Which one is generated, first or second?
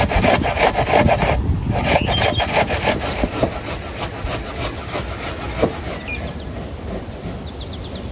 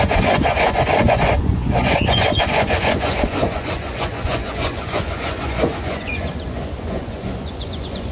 second